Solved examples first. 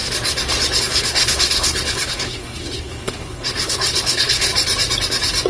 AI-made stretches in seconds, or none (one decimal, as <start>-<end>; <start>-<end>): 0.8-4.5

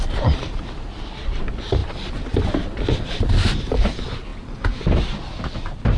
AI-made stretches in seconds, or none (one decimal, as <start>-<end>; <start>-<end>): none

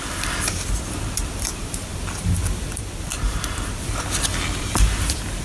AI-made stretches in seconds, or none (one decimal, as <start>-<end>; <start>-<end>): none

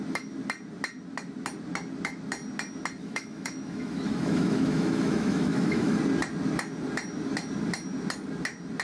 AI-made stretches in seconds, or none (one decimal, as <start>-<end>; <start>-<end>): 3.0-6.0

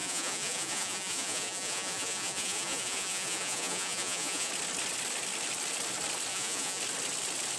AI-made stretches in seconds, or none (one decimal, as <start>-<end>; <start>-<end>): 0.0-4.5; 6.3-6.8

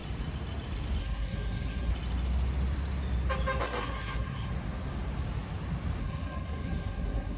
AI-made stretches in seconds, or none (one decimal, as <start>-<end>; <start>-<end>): 1.0-1.9; 3.6-4.5; 6.0-7.4

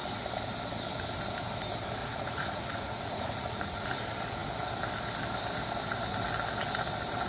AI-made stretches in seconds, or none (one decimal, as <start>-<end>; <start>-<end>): 2.0-4.0

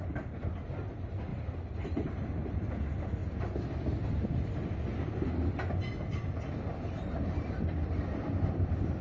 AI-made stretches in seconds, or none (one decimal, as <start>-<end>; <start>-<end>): 1.3-2.7; 7.1-9.0